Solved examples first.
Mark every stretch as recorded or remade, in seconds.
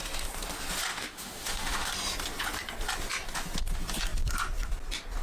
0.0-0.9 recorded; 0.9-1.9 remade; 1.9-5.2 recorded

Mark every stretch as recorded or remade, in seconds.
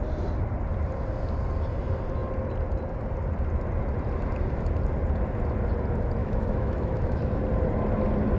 0.0-6.2 recorded; 6.2-7.4 remade; 7.4-8.4 recorded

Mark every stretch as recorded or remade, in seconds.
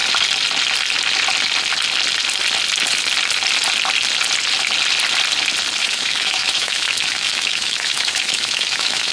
0.0-5.8 recorded; 5.8-9.1 remade